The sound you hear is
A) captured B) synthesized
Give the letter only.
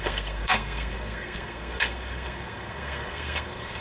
B